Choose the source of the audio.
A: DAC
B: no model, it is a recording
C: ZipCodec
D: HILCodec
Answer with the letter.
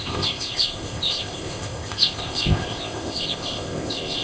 C